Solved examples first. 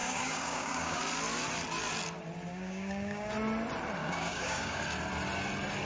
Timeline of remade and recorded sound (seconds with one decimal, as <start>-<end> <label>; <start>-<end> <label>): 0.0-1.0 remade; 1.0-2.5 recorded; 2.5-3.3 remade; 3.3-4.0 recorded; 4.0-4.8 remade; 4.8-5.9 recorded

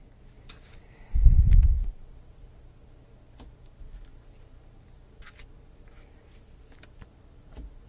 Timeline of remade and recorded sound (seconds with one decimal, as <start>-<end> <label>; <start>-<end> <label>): 0.0-1.8 remade; 1.8-5.9 recorded; 5.9-7.9 remade

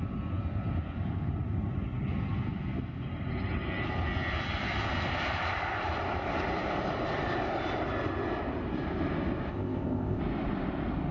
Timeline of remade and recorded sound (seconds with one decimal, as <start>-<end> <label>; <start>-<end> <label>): 0.0-9.5 recorded; 9.5-10.2 remade; 10.2-11.1 recorded

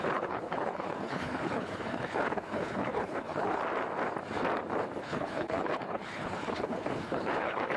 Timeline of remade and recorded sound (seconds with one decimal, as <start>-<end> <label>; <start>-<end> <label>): 0.0-3.6 remade; 3.6-5.0 recorded; 5.0-7.8 remade